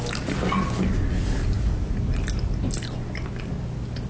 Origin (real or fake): real